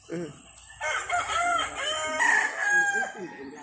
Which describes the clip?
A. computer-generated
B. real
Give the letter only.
B